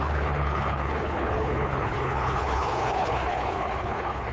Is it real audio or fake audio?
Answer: fake